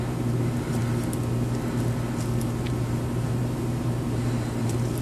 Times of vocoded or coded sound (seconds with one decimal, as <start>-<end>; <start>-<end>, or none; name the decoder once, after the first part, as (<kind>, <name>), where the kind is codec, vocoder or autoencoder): 0.0-0.8 (vocoder, BigVGAN v2); 2.4-5.0